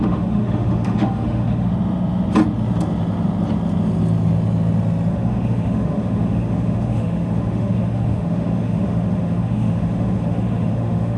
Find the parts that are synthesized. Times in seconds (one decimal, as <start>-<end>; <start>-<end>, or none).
0.0-1.7; 5.1-11.2